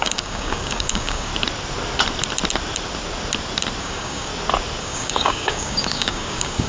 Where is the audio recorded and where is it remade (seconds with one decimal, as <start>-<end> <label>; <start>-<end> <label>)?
0.0-1.3 remade; 1.3-3.8 recorded; 3.8-4.3 remade; 4.3-4.8 recorded; 4.8-6.7 remade